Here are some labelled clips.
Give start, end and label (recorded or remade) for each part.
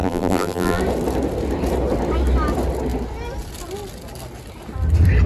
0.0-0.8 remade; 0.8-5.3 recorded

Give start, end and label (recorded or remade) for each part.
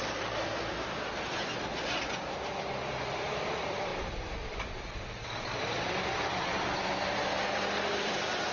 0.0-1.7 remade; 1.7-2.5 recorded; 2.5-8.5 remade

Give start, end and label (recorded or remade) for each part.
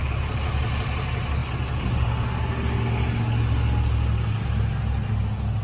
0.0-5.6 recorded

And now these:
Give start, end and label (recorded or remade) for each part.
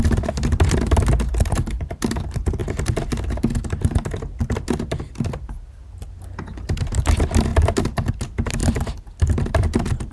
0.0-2.6 remade; 2.6-7.0 recorded; 7.0-10.1 remade